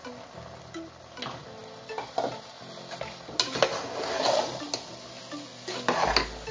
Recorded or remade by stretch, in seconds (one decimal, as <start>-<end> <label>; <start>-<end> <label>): 0.0-6.5 recorded